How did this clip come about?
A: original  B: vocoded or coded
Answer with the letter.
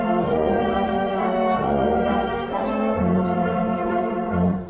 B